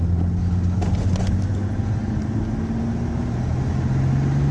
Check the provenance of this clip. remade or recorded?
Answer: recorded